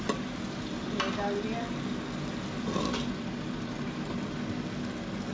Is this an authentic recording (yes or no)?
yes